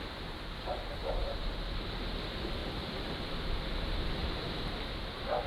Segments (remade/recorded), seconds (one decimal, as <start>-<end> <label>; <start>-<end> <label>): 0.0-2.6 recorded; 2.6-3.3 remade; 3.3-4.2 recorded; 4.2-4.9 remade; 4.9-5.5 recorded